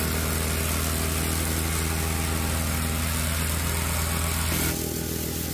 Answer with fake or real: real